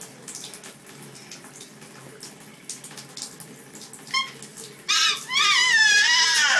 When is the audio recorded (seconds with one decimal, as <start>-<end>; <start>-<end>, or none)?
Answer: 0.0-6.6